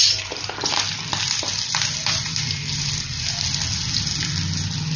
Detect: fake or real real